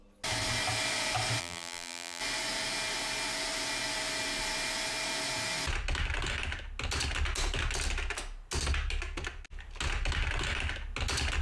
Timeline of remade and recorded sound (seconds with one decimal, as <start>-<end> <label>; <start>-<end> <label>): 0.0-1.4 recorded; 1.4-2.2 remade; 2.2-11.4 recorded